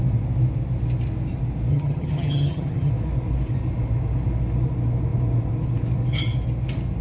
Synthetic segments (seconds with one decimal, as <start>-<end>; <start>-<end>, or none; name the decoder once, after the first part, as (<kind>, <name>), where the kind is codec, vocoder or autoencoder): 1.7-2.9 (vocoder, HiFi-GAN)